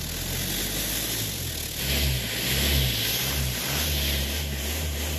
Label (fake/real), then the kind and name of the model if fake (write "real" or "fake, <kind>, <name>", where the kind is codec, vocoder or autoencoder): real